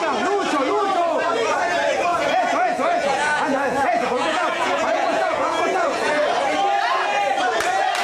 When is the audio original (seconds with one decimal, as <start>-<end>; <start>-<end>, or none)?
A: 0.0-2.1; 6.1-8.0